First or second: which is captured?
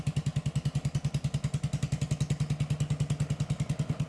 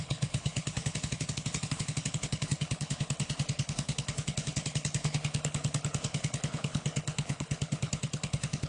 first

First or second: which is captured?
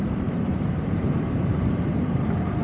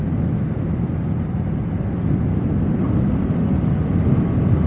second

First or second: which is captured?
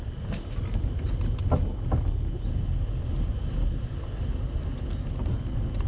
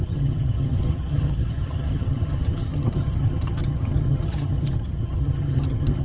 first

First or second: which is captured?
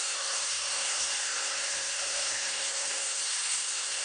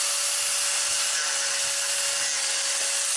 second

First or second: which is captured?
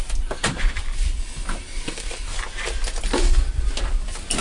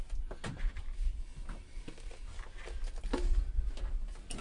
second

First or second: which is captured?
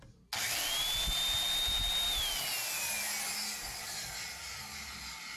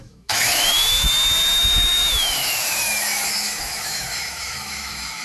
first